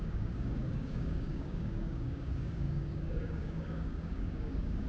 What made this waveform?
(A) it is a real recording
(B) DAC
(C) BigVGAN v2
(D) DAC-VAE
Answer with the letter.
B